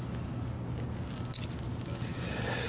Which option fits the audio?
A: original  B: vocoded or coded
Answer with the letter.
A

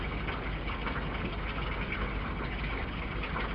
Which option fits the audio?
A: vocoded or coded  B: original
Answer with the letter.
B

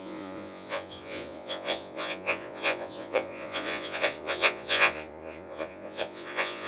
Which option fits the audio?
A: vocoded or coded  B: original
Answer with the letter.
A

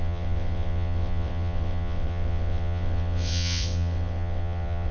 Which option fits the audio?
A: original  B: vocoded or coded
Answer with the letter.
B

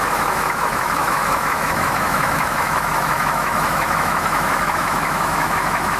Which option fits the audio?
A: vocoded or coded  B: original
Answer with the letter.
A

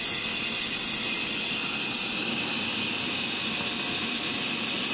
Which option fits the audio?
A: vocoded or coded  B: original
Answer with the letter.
B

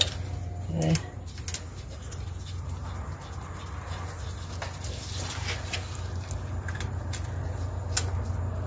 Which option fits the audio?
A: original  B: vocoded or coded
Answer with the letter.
A